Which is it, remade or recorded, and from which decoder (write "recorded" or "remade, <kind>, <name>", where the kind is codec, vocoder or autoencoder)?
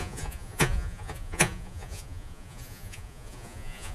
remade, vocoder, Vocos